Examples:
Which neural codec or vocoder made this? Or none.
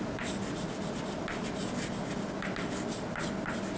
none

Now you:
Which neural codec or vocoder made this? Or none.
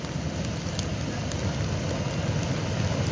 none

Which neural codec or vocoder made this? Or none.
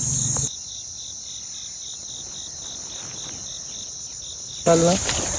none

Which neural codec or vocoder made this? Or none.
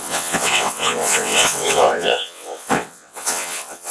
vocoder, WaveNeXt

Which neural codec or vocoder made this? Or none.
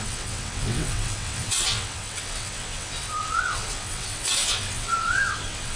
vocoder, WaveNeXt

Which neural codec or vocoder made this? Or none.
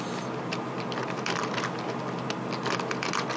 none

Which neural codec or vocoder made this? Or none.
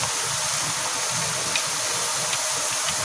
none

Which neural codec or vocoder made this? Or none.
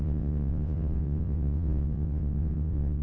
vocoder, WaveNeXt